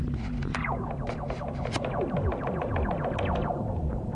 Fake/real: real